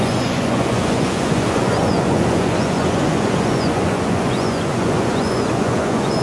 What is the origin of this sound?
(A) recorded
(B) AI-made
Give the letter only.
B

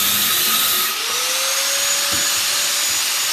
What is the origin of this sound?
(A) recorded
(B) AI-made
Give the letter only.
A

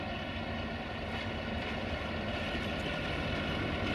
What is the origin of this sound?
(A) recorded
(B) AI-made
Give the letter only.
A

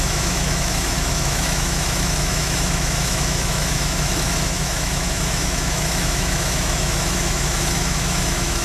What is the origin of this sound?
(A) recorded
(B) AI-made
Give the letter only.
B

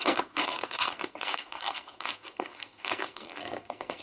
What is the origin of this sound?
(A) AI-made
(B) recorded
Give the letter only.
A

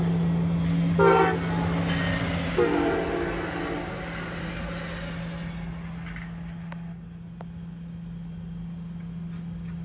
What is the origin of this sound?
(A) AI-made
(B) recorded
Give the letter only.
B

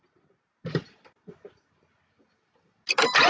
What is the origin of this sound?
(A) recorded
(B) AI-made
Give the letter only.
A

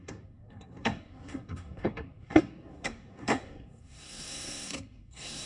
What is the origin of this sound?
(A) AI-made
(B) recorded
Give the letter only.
A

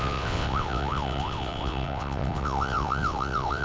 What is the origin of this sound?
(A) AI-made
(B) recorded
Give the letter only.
A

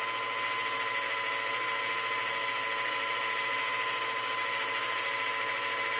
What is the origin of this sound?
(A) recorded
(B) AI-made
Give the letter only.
A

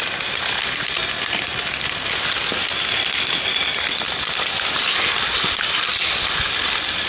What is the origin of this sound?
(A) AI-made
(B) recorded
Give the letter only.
B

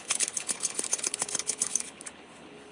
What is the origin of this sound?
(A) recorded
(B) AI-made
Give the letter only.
B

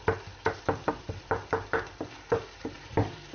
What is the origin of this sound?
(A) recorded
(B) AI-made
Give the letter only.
B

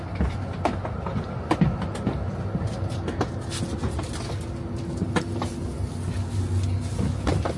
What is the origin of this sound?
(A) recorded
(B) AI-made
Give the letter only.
A